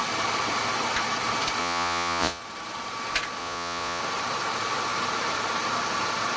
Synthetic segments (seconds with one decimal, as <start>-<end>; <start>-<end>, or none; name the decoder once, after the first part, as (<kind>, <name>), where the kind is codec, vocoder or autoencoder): 1.6-2.4 (vocoder, Vocos); 3.4-4.0